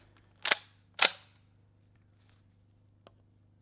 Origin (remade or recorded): recorded